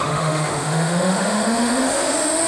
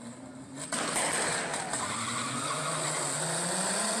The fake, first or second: first